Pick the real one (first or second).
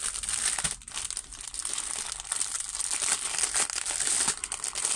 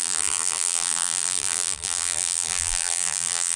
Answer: first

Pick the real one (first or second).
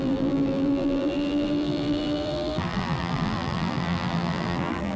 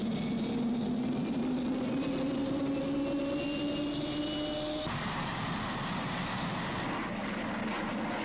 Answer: second